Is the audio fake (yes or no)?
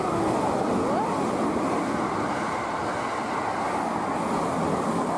no